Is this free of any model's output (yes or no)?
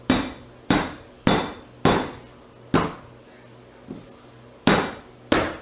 yes